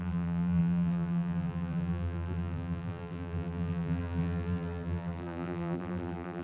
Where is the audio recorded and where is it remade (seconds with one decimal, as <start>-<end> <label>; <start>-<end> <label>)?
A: 0.0-6.4 remade